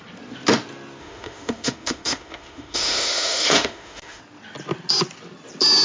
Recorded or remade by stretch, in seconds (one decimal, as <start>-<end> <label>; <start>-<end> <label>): 0.0-1.0 recorded; 1.0-4.2 remade; 4.2-5.8 recorded